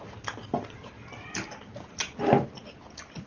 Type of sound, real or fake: real